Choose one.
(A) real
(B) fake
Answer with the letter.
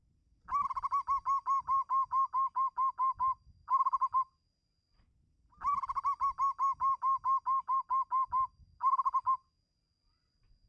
A